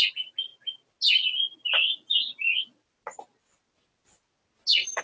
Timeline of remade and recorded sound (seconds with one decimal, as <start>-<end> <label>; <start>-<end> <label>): 0.0-5.0 recorded